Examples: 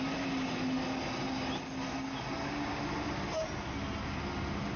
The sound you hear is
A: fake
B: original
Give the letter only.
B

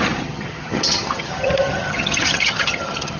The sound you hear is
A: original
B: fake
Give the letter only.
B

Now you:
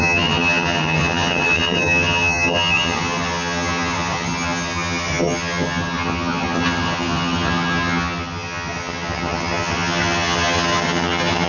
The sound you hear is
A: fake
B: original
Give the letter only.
A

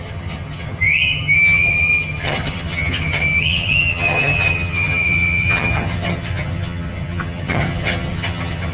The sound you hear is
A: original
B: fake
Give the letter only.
B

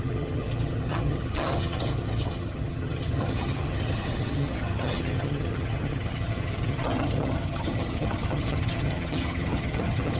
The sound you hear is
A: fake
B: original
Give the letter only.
A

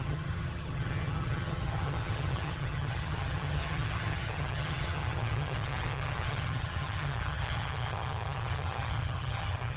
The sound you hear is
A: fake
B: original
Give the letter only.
A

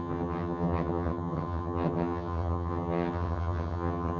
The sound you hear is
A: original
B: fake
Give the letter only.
B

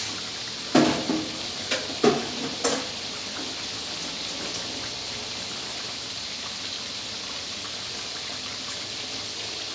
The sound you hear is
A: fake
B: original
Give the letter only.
B